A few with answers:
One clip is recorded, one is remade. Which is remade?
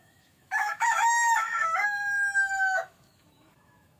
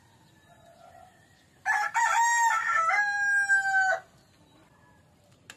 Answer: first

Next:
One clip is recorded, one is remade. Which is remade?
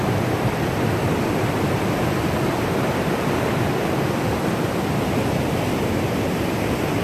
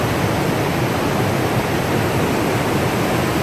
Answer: first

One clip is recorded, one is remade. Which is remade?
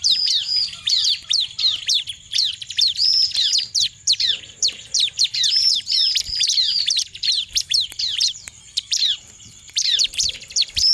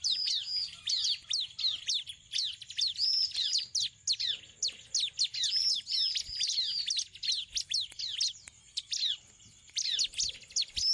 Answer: first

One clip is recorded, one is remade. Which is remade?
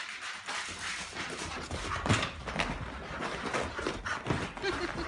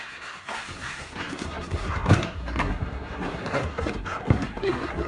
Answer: second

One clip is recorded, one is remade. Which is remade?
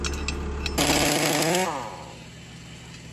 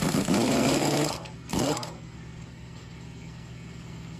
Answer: second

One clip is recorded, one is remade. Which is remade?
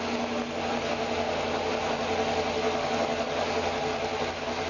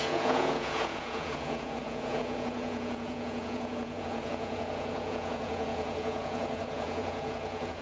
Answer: second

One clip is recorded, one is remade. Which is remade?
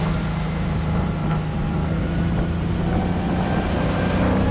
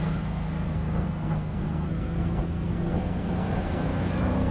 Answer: second